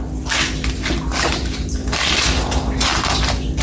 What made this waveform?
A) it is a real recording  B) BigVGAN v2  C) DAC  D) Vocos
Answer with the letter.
A